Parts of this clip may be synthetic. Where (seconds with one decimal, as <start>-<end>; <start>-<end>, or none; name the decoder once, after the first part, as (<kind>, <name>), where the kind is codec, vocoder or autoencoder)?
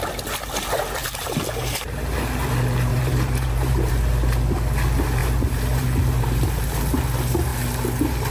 1.0-2.5 (vocoder, BigVGAN v2); 2.9-3.9; 5.2-6.8